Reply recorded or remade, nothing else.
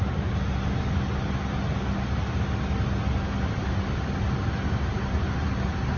recorded